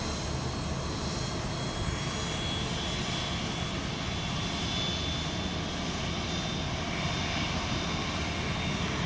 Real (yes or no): yes